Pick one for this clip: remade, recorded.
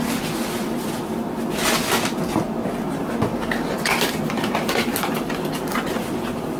recorded